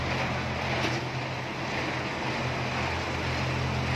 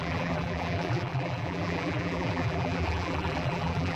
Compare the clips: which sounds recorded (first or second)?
first